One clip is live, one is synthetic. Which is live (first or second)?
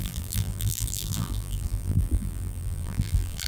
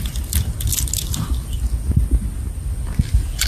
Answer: second